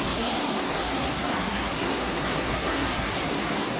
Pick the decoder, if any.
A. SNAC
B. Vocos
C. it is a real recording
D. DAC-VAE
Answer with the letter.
A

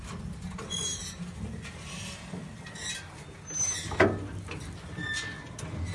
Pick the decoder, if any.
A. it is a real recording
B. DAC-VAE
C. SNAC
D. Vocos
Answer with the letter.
A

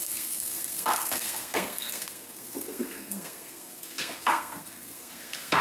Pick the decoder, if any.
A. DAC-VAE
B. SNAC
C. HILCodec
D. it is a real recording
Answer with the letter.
B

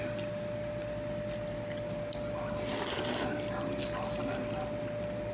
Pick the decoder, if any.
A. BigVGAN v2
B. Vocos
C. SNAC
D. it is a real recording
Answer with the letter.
D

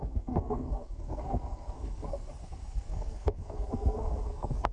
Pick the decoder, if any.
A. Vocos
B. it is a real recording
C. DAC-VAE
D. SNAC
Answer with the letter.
D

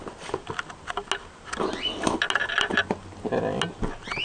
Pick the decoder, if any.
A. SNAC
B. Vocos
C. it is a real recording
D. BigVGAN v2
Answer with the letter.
C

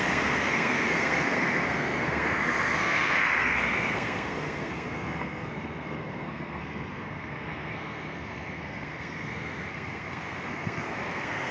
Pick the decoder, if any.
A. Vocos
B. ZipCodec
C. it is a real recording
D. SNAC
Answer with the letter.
D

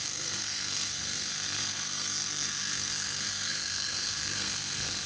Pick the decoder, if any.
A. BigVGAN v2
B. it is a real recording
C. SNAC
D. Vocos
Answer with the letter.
C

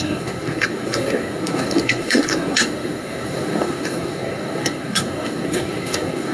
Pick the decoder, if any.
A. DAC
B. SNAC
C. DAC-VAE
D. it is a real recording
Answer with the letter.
B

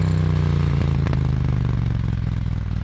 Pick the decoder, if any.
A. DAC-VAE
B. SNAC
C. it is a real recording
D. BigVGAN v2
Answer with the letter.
C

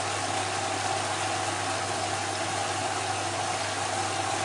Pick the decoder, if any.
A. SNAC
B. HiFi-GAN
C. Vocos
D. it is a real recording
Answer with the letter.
D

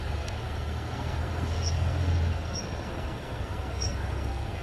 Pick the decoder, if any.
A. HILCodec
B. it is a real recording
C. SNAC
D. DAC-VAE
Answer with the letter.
C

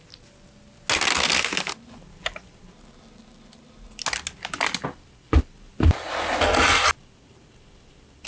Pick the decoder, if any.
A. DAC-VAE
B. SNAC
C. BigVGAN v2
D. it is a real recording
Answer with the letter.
D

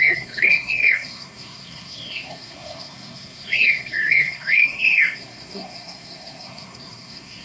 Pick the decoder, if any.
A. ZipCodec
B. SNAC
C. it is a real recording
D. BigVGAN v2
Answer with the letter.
B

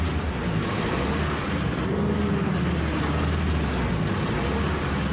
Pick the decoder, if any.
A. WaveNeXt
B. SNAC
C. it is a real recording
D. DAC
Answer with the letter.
C